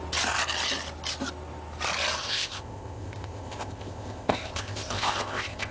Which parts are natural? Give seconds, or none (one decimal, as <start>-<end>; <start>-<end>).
0.0-2.2